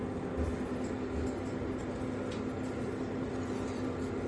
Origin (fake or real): real